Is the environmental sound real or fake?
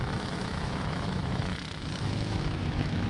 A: fake